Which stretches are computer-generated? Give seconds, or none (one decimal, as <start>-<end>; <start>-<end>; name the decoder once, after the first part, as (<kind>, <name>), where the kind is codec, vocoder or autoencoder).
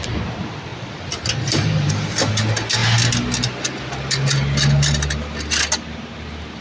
none